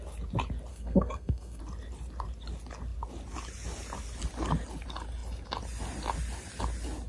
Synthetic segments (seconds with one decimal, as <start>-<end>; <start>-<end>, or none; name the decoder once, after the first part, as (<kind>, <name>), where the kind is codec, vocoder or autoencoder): 0.7-1.6 (codec, SNAC)